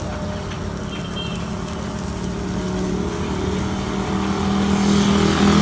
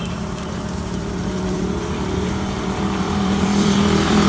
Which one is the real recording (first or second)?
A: first